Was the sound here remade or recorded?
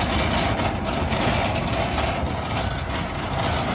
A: recorded